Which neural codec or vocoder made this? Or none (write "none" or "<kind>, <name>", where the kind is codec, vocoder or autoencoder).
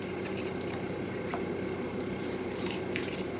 vocoder, BigVGAN v2